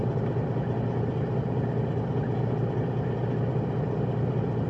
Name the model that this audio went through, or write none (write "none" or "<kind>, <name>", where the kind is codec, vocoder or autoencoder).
none